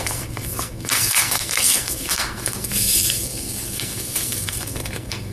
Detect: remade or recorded remade